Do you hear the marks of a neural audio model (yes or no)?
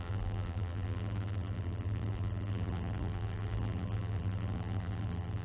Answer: yes